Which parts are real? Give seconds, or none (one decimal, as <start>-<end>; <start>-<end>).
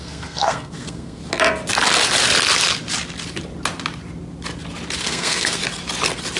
1.2-5.0; 5.6-6.4